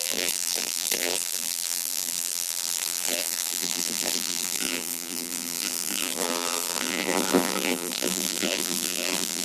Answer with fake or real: fake